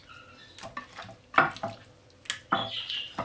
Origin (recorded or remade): recorded